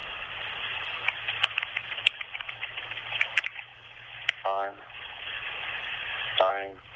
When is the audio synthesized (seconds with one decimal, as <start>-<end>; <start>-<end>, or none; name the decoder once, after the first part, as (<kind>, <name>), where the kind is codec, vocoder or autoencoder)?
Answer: 1.6-3.7 (vocoder, BigVGAN v2); 6.5-7.0